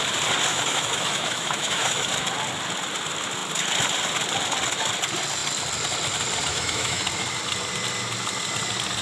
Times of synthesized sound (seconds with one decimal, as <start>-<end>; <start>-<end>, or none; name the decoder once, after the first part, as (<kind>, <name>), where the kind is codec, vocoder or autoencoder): 0.5-2.1 (autoencoder, DAC-VAE); 6.5-7.0